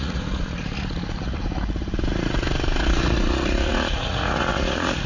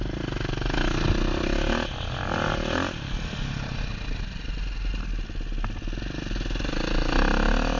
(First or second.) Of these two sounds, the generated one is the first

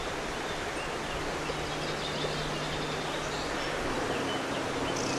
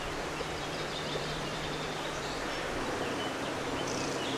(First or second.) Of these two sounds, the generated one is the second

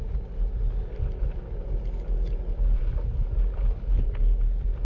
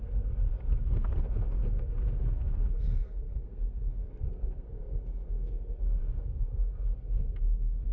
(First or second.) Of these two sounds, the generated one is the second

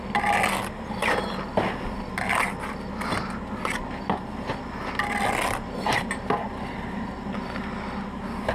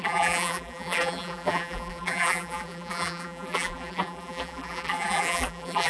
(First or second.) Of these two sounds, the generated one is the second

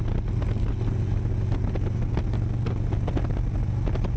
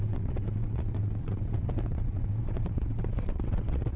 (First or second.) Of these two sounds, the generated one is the second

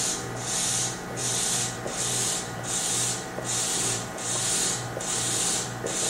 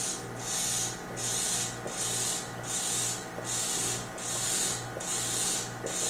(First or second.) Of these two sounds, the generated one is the first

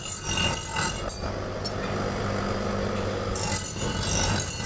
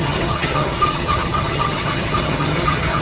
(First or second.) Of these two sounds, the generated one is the second